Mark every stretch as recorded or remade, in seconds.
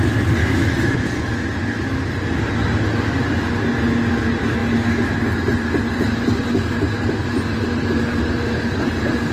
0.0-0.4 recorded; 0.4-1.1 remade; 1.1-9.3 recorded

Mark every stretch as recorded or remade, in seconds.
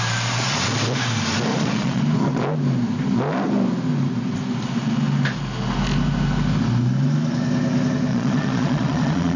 0.0-1.5 recorded; 1.5-2.0 remade; 2.0-8.1 recorded; 8.1-9.4 remade